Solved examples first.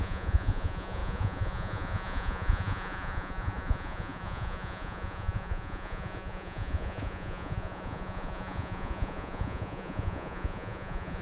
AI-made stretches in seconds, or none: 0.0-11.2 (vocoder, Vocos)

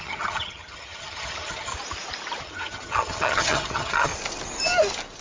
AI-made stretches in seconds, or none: 0.0-1.7 (vocoder, HiFi-GAN); 2.4-4.1

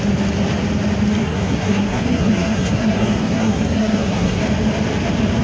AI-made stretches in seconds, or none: 1.2-4.4 (codec, SNAC)